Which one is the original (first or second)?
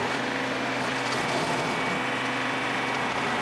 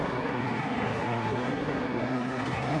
first